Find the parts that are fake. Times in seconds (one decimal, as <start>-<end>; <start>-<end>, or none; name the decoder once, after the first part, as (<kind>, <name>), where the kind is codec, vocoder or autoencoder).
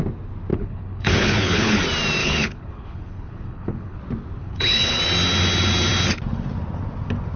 0.5-1.8 (codec, HILCodec); 2.2-4.0; 4.4-5.0